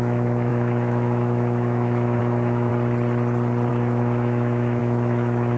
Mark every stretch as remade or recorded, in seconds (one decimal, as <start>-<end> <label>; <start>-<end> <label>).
0.0-2.7 remade; 2.7-3.7 recorded; 3.7-5.6 remade